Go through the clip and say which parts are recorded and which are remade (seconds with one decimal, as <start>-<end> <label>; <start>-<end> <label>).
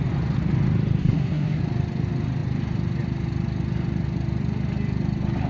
0.0-1.0 recorded; 1.0-1.6 remade; 1.6-5.5 recorded